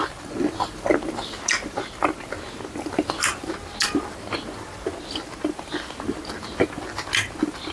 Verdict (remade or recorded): recorded